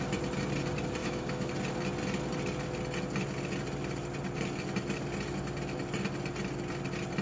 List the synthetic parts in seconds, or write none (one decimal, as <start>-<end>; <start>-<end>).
1.0-1.5